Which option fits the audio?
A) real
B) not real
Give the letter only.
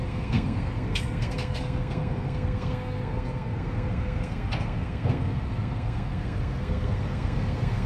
B